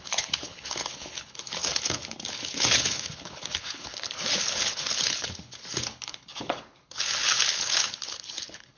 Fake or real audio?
fake